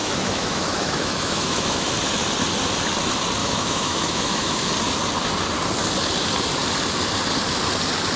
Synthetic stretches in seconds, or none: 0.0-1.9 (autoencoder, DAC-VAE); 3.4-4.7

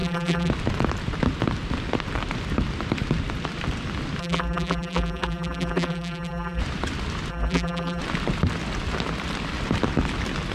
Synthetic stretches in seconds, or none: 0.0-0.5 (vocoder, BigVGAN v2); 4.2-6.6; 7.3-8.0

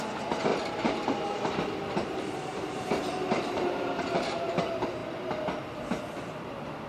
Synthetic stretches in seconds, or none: 0.5-4.6 (vocoder, BigVGAN v2)

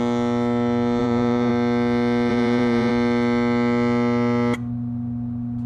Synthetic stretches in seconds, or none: 1.0-1.5 (vocoder, Vocos); 2.3-2.9